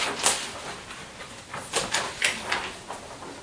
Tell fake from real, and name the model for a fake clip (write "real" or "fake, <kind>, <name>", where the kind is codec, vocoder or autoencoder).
real